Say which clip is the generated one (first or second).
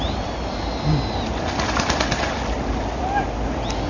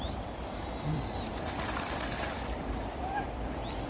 second